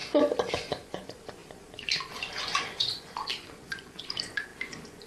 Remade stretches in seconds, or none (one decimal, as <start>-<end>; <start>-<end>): 0.5-5.1